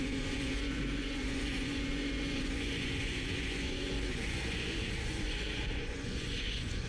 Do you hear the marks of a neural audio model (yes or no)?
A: yes